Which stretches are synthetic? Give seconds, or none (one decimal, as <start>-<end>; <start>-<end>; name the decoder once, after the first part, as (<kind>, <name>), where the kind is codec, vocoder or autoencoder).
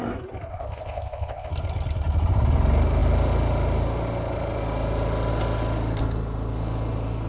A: 0.5-1.5 (codec, ZipCodec)